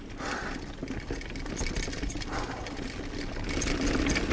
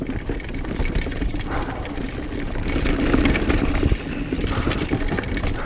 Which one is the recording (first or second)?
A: first